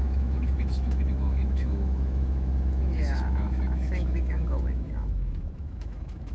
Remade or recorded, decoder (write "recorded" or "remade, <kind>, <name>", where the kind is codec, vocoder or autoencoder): remade, autoencoder, DAC-VAE